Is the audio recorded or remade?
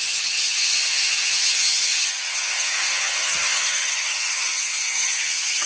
remade